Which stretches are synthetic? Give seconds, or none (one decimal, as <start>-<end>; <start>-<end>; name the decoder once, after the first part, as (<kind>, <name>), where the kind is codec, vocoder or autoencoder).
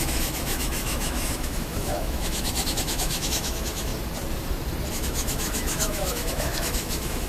0.0-3.9 (autoencoder, DAC-VAE); 4.9-7.3